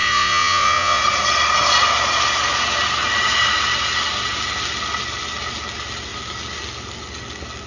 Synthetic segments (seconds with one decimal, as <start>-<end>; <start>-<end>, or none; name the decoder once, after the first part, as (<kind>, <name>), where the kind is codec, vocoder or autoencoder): 0.0-1.0 (vocoder, Vocos)